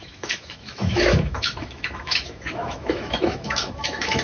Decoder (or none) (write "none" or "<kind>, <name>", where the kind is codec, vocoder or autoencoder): autoencoder, DAC-VAE